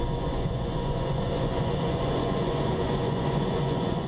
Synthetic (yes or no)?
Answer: yes